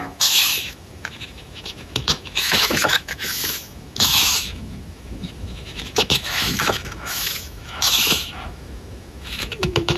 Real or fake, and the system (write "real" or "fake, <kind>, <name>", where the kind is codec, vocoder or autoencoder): fake, autoencoder, DAC-VAE